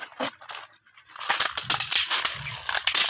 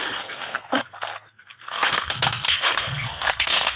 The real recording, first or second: first